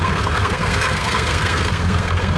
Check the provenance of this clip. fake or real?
fake